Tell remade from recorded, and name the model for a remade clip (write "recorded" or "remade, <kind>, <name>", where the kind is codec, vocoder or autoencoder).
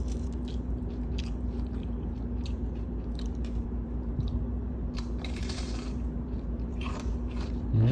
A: remade, vocoder, BigVGAN v2